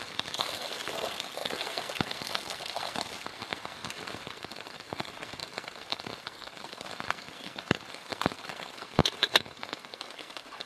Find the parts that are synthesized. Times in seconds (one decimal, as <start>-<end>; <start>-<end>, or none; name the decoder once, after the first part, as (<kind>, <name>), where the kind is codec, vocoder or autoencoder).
0.0-10.7 (codec, SNAC)